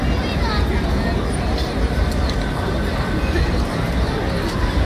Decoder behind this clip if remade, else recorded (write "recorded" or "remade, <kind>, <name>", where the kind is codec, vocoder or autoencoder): recorded